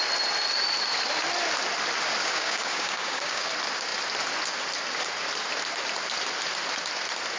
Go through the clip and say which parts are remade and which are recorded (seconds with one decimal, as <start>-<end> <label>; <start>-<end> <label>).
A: 0.0-2.2 recorded; 2.2-3.5 remade; 3.5-7.4 recorded